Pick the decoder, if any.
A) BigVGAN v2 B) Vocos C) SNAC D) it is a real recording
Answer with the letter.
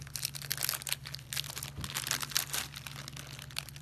D